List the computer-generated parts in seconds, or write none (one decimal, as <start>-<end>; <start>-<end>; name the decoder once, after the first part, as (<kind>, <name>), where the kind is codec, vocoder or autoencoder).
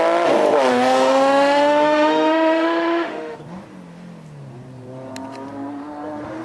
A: 0.7-3.4 (autoencoder, DAC-VAE)